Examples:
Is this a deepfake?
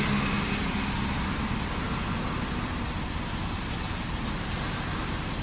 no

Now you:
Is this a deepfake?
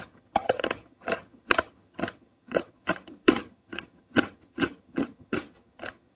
yes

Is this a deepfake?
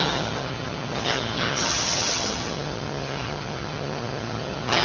yes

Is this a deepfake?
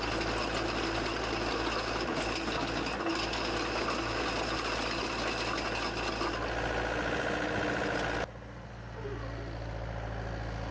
no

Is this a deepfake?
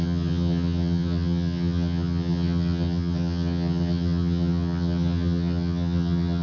yes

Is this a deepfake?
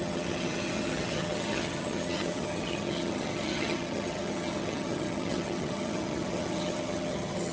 yes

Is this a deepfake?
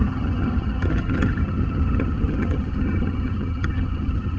yes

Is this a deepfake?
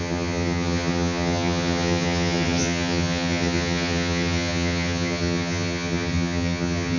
yes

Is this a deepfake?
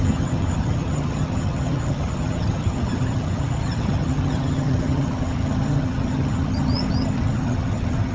yes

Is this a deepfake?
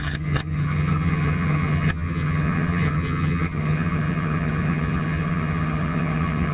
yes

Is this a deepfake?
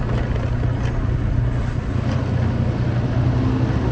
no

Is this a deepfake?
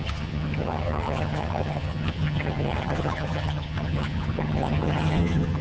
yes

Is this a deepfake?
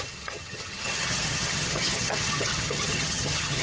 yes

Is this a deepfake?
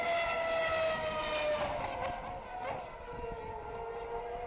no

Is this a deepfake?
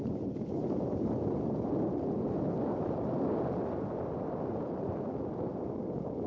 no